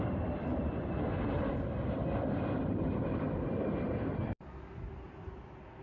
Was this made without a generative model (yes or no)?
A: no